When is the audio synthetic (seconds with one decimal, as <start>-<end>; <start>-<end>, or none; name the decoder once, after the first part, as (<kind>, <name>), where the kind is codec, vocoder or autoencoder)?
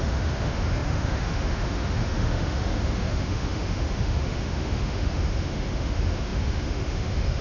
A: 0.0-7.4 (autoencoder, DAC-VAE)